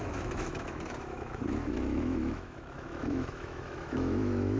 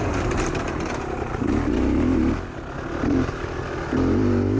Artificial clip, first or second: first